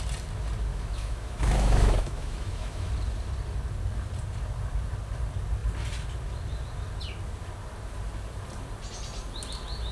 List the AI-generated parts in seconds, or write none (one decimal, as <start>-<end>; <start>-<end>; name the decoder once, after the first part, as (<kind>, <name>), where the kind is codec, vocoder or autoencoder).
0.7-2.9 (autoencoder, DAC-VAE)